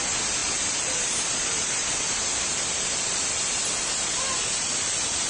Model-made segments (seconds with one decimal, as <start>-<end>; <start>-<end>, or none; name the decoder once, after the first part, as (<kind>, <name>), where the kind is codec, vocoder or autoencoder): 0.4-3.6 (vocoder, BigVGAN v2)